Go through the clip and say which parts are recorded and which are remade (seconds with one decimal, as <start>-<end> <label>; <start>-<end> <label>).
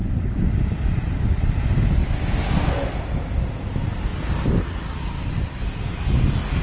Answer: 0.0-6.6 recorded